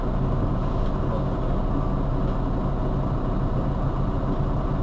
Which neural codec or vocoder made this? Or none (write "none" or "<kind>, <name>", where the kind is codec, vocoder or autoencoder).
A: none